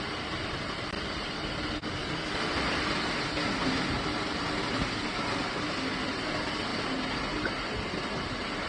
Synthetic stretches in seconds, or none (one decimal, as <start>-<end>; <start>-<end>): none